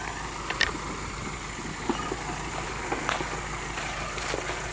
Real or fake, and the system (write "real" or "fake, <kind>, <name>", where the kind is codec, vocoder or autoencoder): real